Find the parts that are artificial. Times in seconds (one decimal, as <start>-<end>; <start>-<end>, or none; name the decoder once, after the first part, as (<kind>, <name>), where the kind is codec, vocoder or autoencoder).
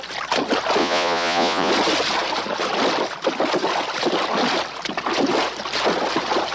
0.8-1.7 (vocoder, Vocos)